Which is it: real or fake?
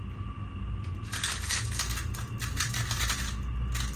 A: real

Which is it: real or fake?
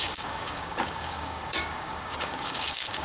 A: fake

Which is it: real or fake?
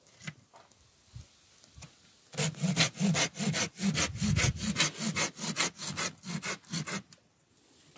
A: real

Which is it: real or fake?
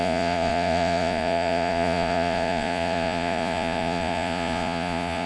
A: fake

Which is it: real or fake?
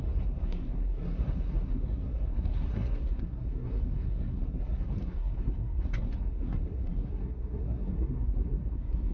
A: fake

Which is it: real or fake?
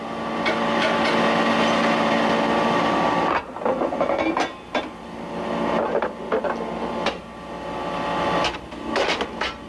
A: real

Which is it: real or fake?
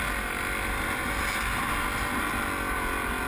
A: real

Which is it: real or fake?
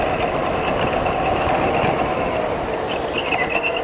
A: real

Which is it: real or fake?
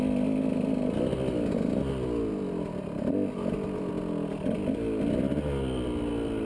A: real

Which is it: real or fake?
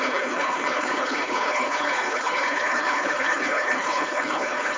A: fake